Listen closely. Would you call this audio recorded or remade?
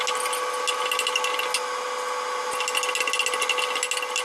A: recorded